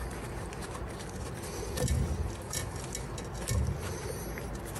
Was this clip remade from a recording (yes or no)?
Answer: no